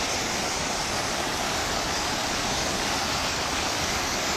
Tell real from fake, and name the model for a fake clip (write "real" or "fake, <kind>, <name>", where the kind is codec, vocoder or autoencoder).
fake, codec, DAC